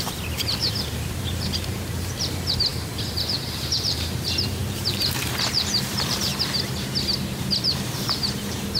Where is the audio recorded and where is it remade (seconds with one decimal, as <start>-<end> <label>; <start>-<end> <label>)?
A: 0.0-2.7 remade; 2.7-3.3 recorded; 3.3-6.3 remade; 6.3-7.4 recorded; 7.4-8.8 remade